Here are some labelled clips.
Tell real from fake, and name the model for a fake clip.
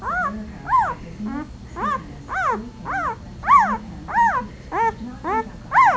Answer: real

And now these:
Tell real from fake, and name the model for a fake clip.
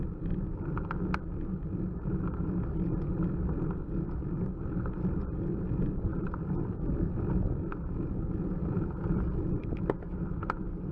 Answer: real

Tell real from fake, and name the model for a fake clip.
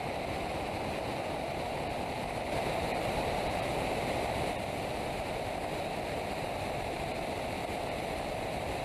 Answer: fake, vocoder, BigVGAN v2